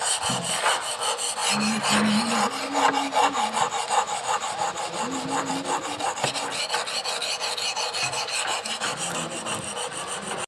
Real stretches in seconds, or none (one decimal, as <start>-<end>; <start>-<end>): 0.0-10.5